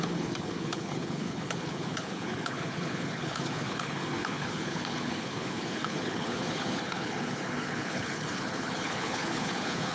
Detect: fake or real fake